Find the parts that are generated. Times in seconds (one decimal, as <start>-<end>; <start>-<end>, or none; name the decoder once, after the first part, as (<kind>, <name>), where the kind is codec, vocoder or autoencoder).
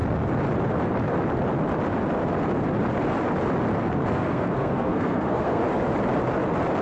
4.1-5.6 (codec, SNAC)